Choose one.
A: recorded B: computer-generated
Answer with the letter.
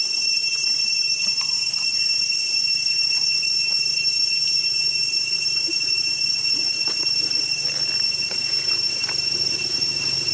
B